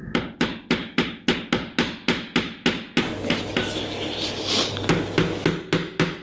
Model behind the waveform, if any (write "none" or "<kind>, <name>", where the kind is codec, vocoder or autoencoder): none